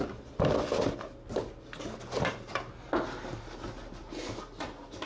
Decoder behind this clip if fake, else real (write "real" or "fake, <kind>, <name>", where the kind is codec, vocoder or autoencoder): real